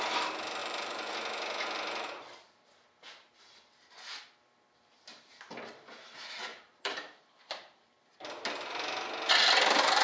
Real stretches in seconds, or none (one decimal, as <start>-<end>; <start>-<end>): 0.0-0.6; 1.1-6.5; 8.0-10.0